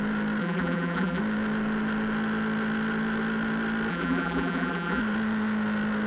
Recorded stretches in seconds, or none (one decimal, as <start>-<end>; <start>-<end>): 0.0-0.4; 1.2-3.9; 5.0-6.1